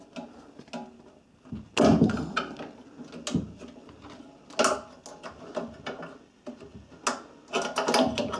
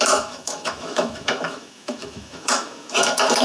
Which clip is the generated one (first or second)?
second